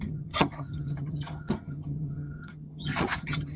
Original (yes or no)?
no